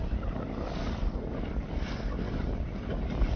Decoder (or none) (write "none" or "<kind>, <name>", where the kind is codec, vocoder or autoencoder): none